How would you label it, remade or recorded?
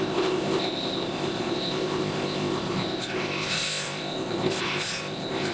remade